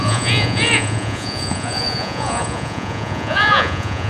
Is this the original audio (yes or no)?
no